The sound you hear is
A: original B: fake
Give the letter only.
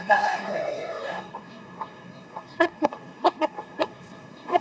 B